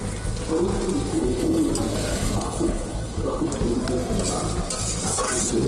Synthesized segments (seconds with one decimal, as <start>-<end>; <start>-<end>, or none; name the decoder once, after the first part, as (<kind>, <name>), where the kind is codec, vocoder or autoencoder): 1.1-1.7 (codec, HILCodec); 2.1-3.5